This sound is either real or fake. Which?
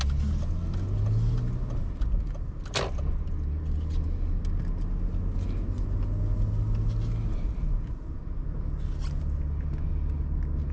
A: real